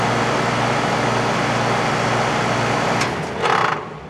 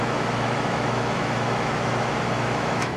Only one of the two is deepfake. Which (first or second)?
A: second